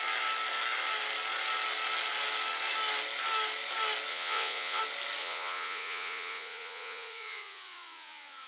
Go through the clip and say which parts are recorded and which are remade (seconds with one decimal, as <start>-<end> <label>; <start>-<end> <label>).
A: 0.0-4.1 recorded; 4.1-4.8 remade; 4.8-5.2 recorded; 5.2-8.5 remade

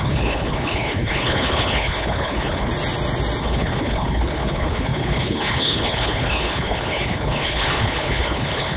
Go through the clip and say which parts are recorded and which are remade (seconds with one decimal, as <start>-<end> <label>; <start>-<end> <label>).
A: 0.0-2.7 remade; 2.7-3.4 recorded; 3.4-8.8 remade

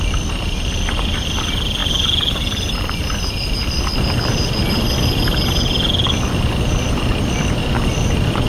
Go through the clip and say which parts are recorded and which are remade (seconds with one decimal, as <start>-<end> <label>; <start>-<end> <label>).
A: 0.0-8.5 recorded

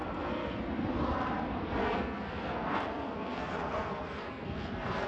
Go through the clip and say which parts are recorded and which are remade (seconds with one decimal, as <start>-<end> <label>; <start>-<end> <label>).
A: 0.0-0.6 remade; 0.6-1.8 recorded; 1.8-5.1 remade

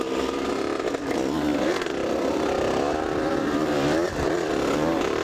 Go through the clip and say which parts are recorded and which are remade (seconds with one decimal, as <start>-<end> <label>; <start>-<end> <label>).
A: 0.0-1.5 recorded; 1.5-4.5 remade; 4.5-5.2 recorded

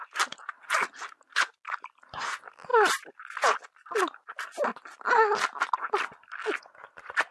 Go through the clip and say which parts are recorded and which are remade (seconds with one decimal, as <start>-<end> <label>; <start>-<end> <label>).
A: 0.0-7.3 recorded

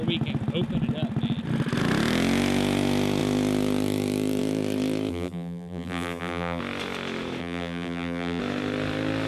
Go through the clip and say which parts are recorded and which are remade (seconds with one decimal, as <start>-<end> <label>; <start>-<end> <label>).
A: 0.0-5.1 recorded; 5.1-6.6 remade; 6.6-7.4 recorded; 7.4-8.4 remade; 8.4-9.3 recorded